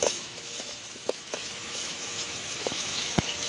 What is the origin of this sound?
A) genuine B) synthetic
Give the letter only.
B